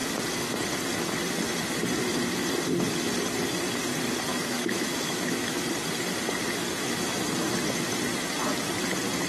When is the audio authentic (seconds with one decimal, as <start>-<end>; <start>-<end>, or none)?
0.0-4.3; 5.6-6.7; 7.3-9.3